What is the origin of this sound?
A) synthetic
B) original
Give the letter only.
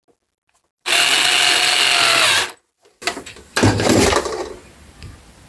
B